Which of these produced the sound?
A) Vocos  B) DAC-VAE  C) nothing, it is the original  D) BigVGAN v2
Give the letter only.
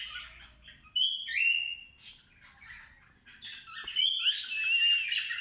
C